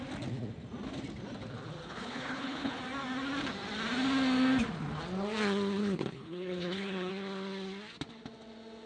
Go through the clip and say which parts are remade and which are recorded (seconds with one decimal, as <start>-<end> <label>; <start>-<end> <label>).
0.0-1.8 recorded; 1.8-2.8 remade; 2.8-5.8 recorded; 5.8-7.1 remade; 7.1-8.9 recorded